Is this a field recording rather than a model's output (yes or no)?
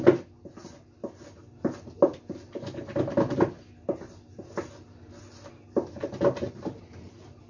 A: yes